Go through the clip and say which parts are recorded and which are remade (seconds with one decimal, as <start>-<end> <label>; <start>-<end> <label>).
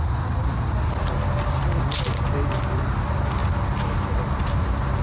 0.0-5.0 recorded